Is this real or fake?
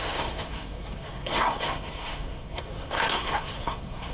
fake